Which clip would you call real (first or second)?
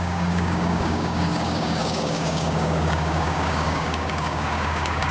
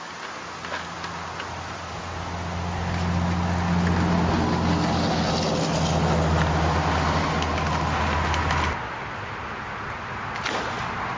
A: second